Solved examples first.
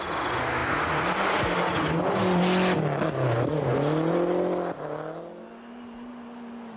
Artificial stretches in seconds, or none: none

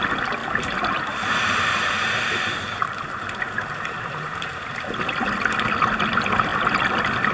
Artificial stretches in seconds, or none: 0.4-4.8 (vocoder, BigVGAN v2)

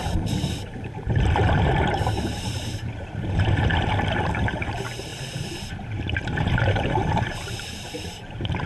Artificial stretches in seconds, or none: 0.0-5.1 (vocoder, BigVGAN v2); 6.4-8.7

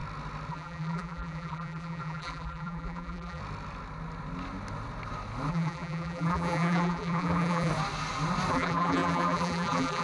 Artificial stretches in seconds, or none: 0.5-3.4 (vocoder, BigVGAN v2); 5.5-7.7; 8.5-10.0

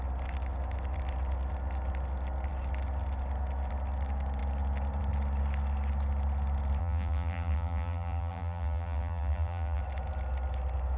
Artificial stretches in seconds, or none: 6.8-9.8 (vocoder, BigVGAN v2)

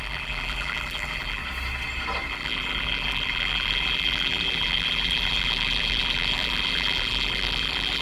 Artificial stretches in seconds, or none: 0.0-1.4 (vocoder, BigVGAN v2); 2.3-8.0

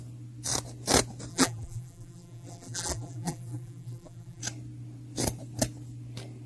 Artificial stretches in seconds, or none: 1.3-4.4 (vocoder, BigVGAN v2)

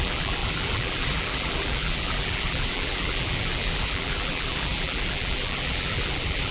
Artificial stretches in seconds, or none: 0.0-6.5 (vocoder, BigVGAN v2)